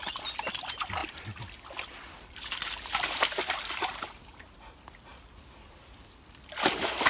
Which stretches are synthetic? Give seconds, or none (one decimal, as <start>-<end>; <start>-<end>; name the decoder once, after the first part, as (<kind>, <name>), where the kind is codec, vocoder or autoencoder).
0.0-1.0 (vocoder, BigVGAN v2); 1.9-7.1